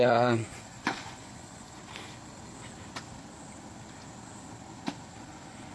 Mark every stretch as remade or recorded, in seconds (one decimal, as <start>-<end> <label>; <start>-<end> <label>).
0.0-1.8 remade; 1.8-5.2 recorded; 5.2-5.7 remade